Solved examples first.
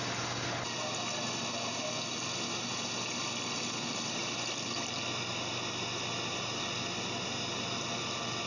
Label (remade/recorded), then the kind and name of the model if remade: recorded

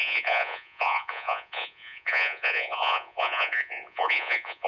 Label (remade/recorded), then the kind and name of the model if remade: remade, vocoder, Vocos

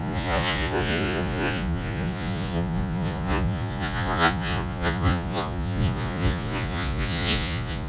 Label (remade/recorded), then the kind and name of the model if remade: remade, vocoder, Vocos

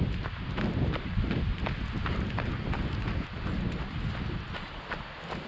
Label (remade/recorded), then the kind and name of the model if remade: recorded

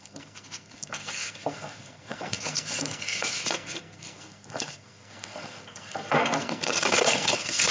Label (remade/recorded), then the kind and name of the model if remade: remade, codec, SNAC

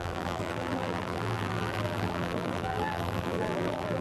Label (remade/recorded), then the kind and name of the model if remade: remade, vocoder, BigVGAN v2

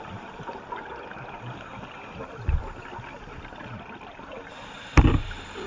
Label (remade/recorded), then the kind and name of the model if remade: recorded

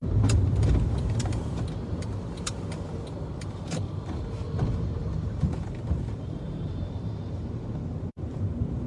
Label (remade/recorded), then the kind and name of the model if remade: remade, vocoder, BigVGAN v2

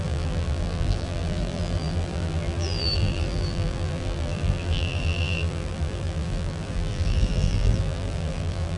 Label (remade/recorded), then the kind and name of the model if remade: remade, vocoder, BigVGAN v2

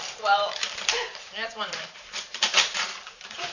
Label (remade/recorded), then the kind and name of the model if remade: remade, vocoder, BigVGAN v2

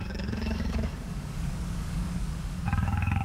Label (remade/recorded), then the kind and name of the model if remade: remade, codec, DAC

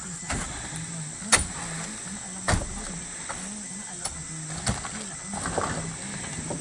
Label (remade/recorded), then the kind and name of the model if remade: recorded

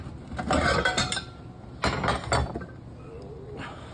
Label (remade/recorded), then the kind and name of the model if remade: recorded